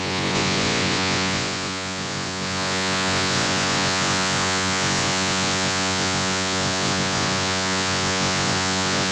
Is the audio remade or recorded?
remade